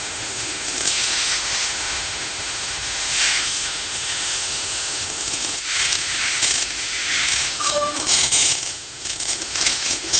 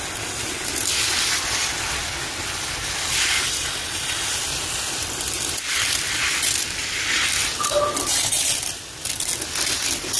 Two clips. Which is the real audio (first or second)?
second